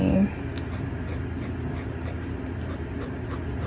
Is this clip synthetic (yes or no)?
no